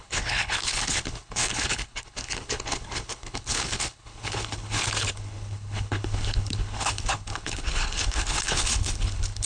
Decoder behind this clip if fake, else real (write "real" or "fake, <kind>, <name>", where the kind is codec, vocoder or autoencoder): fake, codec, HILCodec